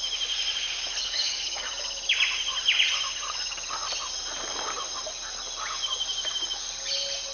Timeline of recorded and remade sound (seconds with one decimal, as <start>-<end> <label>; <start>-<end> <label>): 0.0-1.0 recorded; 1.0-1.7 remade; 1.7-7.3 recorded